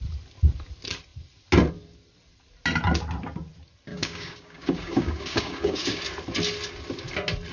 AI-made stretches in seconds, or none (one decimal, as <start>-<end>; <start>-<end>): 3.9-6.0